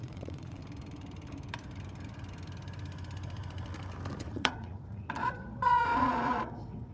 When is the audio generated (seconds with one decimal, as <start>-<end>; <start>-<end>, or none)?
0.0-0.6; 4.2-6.9